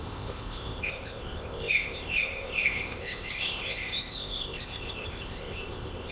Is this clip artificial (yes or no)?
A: yes